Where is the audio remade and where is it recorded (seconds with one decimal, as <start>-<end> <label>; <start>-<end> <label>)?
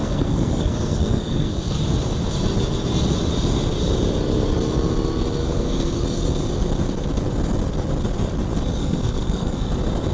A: 0.0-1.8 remade; 1.8-5.4 recorded; 5.4-6.0 remade; 6.0-8.8 recorded; 8.8-9.7 remade; 9.7-10.1 recorded